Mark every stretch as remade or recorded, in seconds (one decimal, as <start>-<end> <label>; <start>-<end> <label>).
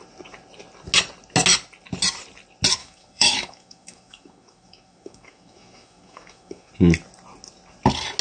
0.0-2.8 recorded; 2.8-6.7 remade; 6.7-8.2 recorded